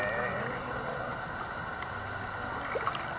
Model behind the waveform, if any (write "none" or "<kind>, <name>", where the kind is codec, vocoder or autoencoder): none